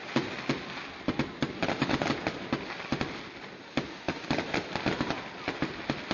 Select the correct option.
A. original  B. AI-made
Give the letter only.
A